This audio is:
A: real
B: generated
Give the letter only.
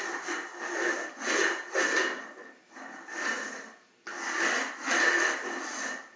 A